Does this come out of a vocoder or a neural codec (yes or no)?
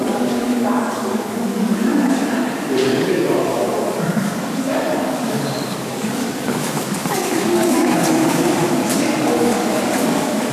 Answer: yes